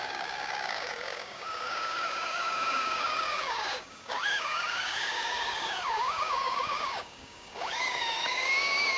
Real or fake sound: fake